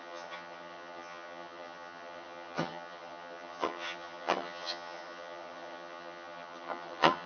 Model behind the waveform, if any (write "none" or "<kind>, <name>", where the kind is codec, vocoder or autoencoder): vocoder, HiFi-GAN